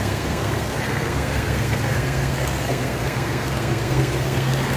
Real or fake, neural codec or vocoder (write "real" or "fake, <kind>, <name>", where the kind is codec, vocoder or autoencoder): fake, codec, SNAC